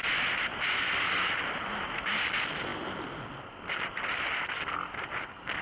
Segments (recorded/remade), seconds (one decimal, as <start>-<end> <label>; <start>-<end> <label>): 0.0-5.6 recorded